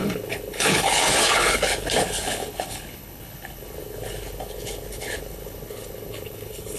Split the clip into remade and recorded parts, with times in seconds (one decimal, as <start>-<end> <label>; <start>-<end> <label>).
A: 0.0-6.8 remade